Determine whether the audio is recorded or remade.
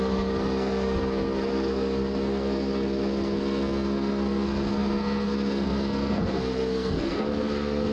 remade